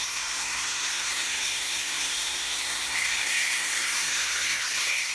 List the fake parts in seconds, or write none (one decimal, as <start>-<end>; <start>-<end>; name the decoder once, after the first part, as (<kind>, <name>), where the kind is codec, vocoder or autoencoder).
0.0-5.1 (codec, SNAC)